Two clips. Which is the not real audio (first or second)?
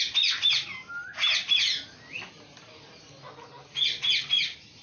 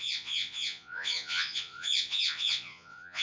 second